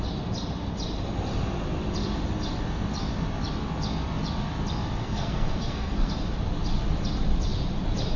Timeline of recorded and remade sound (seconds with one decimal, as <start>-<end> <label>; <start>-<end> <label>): 0.0-5.0 recorded; 5.0-6.1 remade; 6.1-8.2 recorded